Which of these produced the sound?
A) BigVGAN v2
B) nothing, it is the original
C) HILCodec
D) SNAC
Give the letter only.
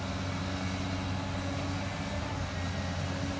B